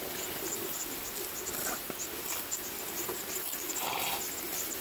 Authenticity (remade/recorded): recorded